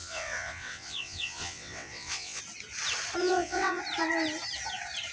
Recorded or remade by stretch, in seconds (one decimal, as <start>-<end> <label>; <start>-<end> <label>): 0.0-2.4 remade; 2.4-3.2 recorded; 3.2-3.8 remade; 3.8-5.1 recorded